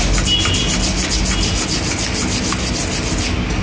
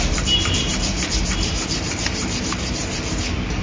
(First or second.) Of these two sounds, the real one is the first